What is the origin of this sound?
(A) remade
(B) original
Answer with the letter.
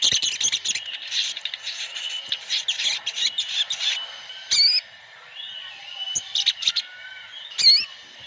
B